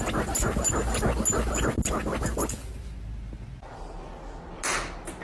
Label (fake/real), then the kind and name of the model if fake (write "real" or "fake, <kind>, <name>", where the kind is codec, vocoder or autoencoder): real